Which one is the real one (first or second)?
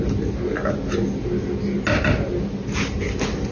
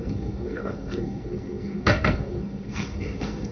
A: first